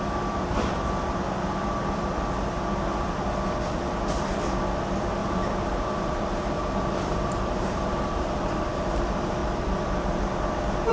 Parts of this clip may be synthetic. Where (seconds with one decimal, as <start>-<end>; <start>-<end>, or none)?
5.2-8.6